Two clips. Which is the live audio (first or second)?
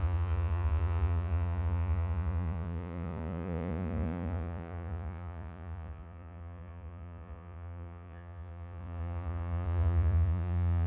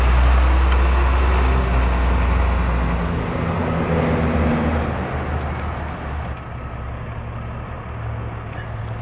second